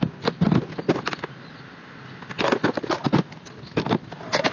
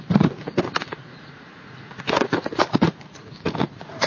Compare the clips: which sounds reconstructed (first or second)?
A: second